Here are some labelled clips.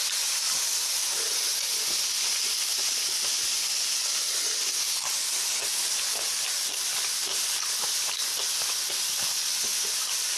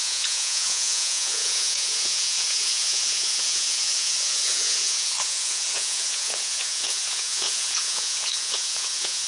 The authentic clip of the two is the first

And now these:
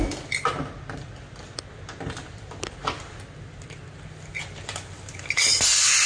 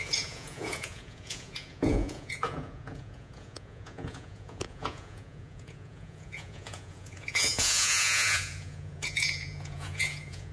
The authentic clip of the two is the first